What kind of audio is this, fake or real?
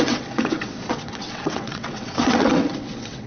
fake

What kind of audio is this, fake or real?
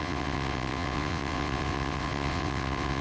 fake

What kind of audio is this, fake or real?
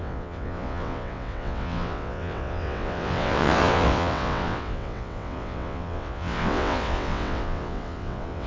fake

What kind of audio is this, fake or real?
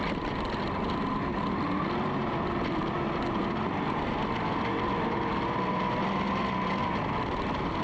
real